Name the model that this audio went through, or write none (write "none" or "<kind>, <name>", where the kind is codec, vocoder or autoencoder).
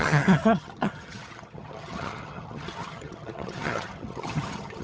vocoder, HiFi-GAN